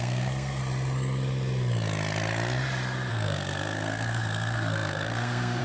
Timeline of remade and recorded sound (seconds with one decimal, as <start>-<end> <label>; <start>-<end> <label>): 0.0-0.6 remade; 0.6-3.1 recorded; 3.1-5.6 remade